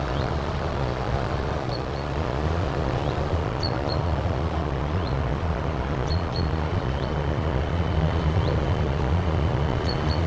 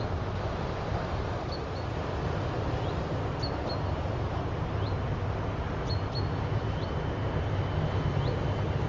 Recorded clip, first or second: second